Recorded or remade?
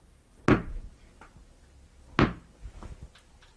recorded